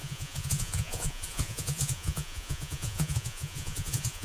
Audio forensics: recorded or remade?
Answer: remade